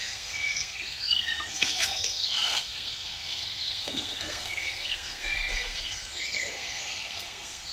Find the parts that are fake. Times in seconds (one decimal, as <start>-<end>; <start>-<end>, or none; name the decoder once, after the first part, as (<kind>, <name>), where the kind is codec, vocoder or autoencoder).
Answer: 0.0-7.7 (codec, SNAC)